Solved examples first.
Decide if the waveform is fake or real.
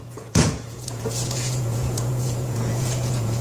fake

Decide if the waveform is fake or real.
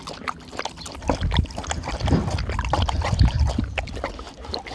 real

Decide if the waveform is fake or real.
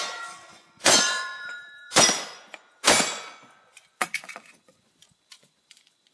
fake